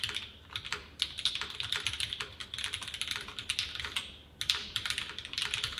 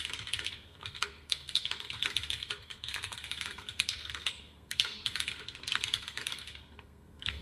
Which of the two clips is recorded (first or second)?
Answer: first